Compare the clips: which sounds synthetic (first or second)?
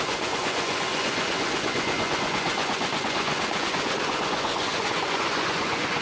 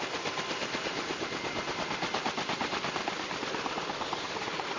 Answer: first